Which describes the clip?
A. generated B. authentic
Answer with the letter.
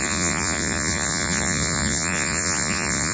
A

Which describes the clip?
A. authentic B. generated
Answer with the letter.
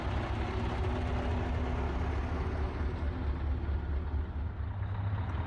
A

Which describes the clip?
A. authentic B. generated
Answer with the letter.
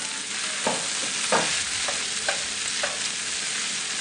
A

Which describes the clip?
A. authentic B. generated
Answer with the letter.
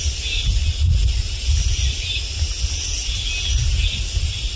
A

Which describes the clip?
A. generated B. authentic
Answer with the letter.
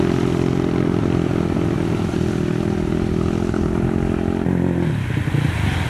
B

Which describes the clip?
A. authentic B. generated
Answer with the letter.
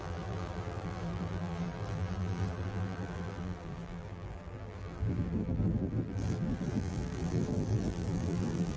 B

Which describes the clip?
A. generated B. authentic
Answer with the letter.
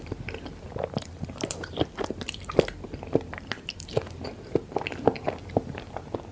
A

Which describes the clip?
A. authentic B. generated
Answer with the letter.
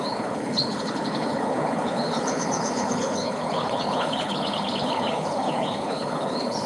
B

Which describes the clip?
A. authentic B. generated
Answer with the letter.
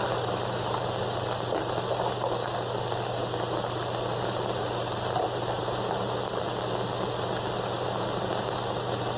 A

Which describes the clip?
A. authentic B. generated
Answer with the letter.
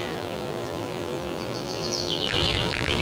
B